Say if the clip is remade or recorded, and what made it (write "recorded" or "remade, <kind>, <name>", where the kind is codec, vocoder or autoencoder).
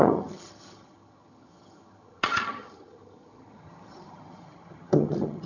remade, vocoder, HiFi-GAN